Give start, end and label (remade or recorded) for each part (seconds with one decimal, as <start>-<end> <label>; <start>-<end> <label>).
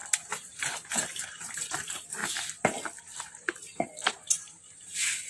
0.0-1.6 remade; 1.6-4.0 recorded; 4.0-5.3 remade